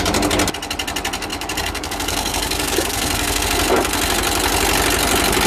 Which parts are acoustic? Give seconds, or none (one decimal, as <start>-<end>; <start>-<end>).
0.0-1.3; 3.4-5.5